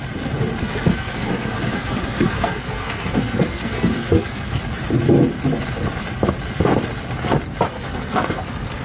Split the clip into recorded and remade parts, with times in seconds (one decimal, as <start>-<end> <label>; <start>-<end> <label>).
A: 0.0-0.6 recorded; 0.6-4.6 remade; 4.6-7.7 recorded; 7.7-8.8 remade

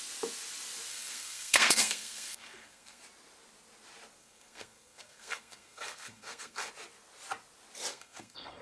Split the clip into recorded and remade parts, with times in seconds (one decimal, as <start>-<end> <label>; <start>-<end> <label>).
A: 0.0-0.9 recorded; 0.9-3.0 remade; 3.0-4.2 recorded; 4.2-6.7 remade; 6.7-7.9 recorded; 7.9-8.6 remade

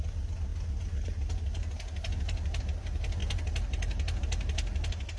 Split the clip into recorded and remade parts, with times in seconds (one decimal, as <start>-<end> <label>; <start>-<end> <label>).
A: 0.0-5.2 recorded

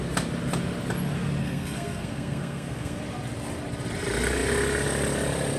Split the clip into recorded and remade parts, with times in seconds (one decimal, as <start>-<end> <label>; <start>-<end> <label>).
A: 0.0-1.4 recorded; 1.4-3.0 remade; 3.0-5.6 recorded